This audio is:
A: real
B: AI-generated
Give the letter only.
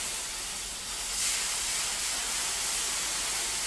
A